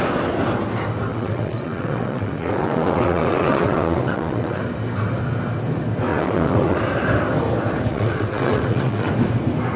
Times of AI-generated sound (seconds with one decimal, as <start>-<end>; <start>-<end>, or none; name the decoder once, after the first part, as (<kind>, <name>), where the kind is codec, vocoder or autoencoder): 1.1-4.6 (vocoder, WaveNeXt); 6.1-6.8; 7.9-9.1